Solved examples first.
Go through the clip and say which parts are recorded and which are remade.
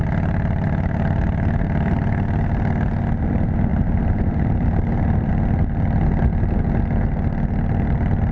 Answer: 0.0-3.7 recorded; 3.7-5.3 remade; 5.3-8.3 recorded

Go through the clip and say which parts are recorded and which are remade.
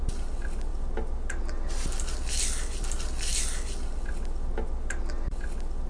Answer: 0.0-5.9 recorded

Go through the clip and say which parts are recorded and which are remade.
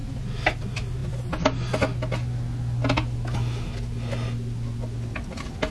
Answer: 0.0-5.7 recorded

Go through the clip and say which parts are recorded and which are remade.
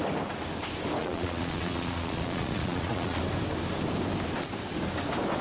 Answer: 0.0-1.0 recorded; 1.0-3.2 remade; 3.2-5.4 recorded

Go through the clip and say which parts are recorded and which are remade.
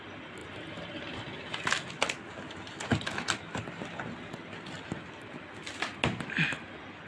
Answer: 0.0-7.1 recorded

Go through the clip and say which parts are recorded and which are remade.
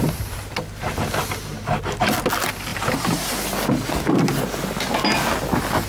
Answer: 0.0-2.7 recorded; 2.7-3.4 remade; 3.4-5.9 recorded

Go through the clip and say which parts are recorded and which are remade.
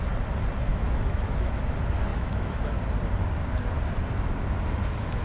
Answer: 0.0-0.7 recorded; 0.7-1.6 remade; 1.6-2.1 recorded; 2.1-2.8 remade; 2.8-5.2 recorded